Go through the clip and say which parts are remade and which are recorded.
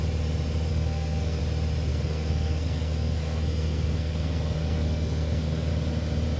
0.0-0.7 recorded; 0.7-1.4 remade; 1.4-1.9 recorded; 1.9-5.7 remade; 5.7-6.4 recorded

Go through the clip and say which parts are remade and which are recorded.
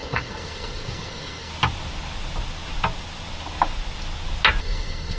0.0-1.5 remade; 1.5-4.6 recorded; 4.6-5.2 remade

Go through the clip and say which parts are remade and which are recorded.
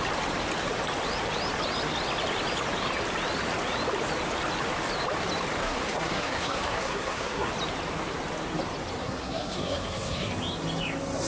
0.0-5.6 recorded; 5.6-7.5 remade; 7.5-9.0 recorded; 9.0-10.3 remade; 10.3-11.3 recorded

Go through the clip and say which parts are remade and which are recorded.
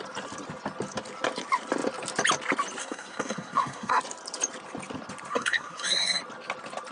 0.0-2.8 recorded; 2.8-4.0 remade; 4.0-5.3 recorded; 5.3-6.2 remade; 6.2-6.9 recorded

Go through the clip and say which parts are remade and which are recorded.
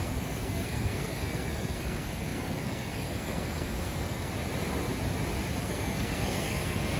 0.0-4.3 remade; 4.3-5.6 recorded; 5.6-7.0 remade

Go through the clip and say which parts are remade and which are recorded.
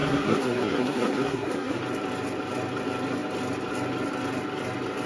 0.0-1.8 remade; 1.8-5.1 recorded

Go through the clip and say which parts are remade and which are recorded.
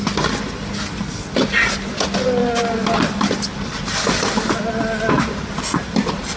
0.0-6.4 recorded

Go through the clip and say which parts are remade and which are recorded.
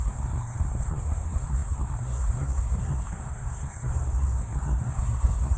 0.0-5.6 remade